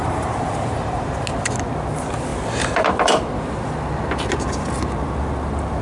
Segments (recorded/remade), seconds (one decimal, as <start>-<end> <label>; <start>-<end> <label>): 0.0-1.2 remade; 1.2-5.8 recorded